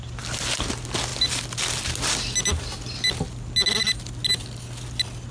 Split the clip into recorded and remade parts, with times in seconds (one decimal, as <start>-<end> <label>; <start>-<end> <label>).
0.0-5.3 recorded